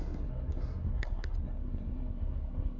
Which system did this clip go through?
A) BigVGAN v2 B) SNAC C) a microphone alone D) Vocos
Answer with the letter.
B